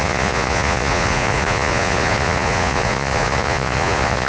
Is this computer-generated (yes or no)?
yes